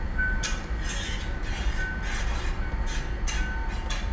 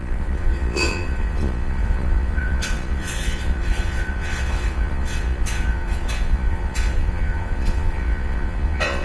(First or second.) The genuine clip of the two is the first